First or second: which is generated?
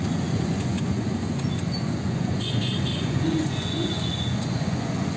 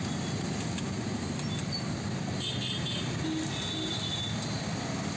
first